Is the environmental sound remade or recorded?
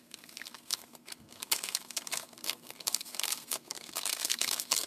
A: remade